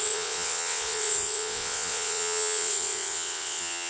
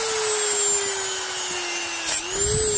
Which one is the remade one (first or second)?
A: first